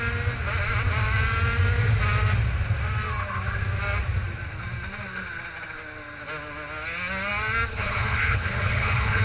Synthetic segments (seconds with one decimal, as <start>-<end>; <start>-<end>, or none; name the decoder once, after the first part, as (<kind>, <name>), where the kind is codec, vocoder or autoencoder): 7.7-9.2 (codec, HILCodec)